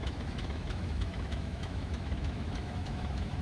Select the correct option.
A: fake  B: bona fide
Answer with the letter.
A